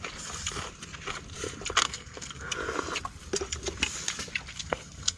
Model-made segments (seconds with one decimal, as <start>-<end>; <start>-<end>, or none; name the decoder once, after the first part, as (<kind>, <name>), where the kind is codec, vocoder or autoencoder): 1.8-2.5 (codec, SNAC); 4.5-5.2